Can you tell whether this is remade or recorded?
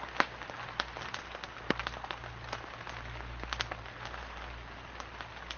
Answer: recorded